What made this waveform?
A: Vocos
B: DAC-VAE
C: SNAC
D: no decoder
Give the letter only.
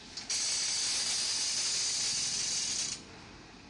D